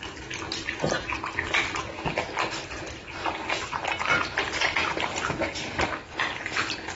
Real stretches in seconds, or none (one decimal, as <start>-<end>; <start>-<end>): 0.0-7.0